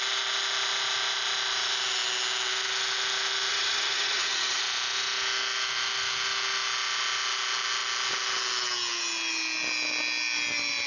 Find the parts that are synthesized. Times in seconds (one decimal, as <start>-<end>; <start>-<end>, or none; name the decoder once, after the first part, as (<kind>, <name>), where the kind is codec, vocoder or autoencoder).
3.5-4.6 (vocoder, HiFi-GAN)